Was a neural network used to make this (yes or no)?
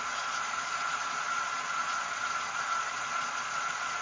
yes